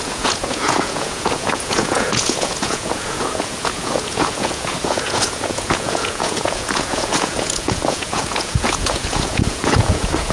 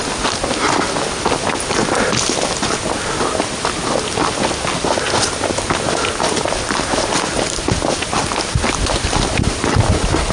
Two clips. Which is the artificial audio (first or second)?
first